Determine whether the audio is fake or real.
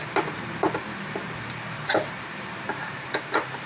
fake